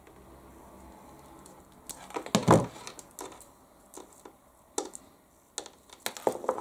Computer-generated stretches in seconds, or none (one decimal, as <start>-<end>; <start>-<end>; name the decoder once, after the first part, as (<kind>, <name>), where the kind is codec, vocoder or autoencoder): none